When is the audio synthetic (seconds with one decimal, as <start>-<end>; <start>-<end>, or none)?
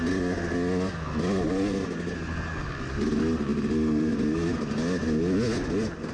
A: none